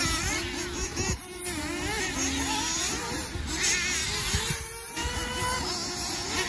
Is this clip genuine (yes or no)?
yes